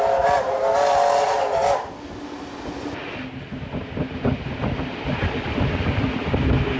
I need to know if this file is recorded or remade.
recorded